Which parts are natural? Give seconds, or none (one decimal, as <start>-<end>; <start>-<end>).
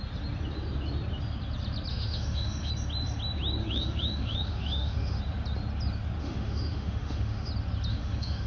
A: 0.0-1.9; 2.7-3.6; 5.2-6.2; 7.5-7.9